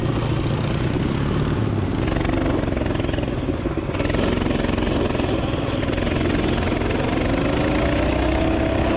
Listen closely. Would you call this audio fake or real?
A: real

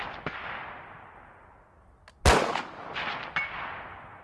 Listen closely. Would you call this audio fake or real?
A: real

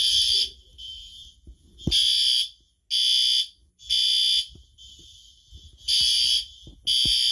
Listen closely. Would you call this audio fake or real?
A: real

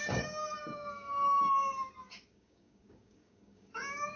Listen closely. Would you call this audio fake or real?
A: fake